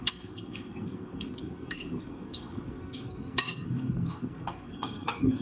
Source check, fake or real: fake